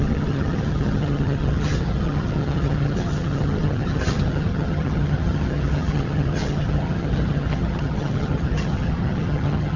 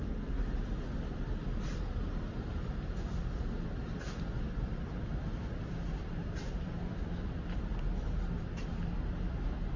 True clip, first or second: second